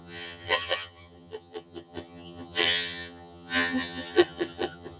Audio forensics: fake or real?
fake